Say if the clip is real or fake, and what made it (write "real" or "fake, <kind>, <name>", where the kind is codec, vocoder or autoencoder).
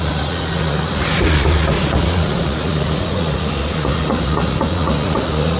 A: fake, vocoder, Vocos